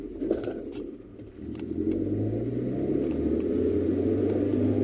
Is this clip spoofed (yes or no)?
no